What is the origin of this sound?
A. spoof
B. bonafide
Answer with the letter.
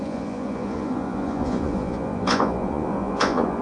A